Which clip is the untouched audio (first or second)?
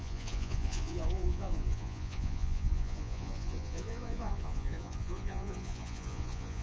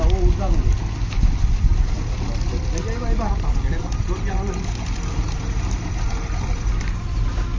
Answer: second